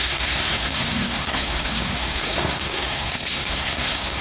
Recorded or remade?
remade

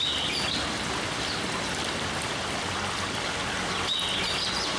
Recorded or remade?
recorded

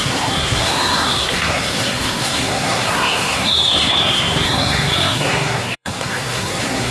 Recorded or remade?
remade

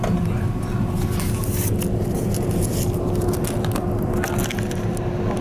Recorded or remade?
recorded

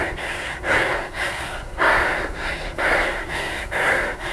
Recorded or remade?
remade